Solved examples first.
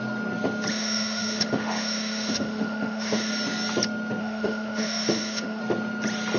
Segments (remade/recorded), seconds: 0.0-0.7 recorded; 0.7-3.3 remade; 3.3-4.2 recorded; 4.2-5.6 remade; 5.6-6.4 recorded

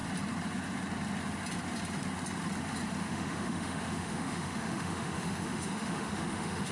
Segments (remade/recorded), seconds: 0.0-3.0 recorded; 3.0-6.7 remade

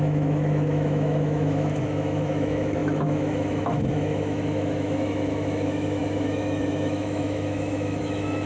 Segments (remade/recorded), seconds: 0.0-8.5 remade